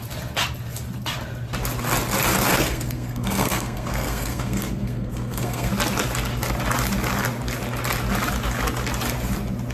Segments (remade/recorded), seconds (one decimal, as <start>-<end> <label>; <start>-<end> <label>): 0.0-2.5 recorded; 2.5-5.7 remade; 5.7-9.7 recorded